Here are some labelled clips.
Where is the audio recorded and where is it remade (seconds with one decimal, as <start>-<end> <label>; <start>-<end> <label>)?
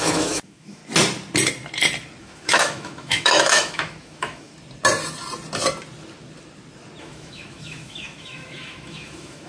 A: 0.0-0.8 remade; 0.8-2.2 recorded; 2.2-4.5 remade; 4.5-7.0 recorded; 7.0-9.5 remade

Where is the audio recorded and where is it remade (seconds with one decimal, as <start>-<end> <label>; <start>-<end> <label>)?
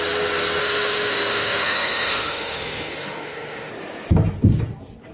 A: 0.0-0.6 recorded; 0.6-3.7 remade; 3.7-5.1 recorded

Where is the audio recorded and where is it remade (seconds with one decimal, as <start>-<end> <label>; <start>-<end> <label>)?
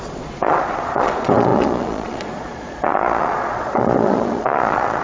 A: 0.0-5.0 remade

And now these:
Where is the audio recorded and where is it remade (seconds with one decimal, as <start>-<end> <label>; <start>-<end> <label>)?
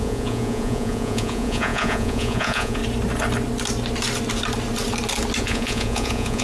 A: 0.0-2.8 remade; 2.8-5.4 recorded; 5.4-6.4 remade